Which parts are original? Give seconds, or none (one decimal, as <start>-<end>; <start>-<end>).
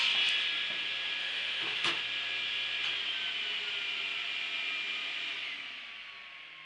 0.0-1.2; 2.0-6.7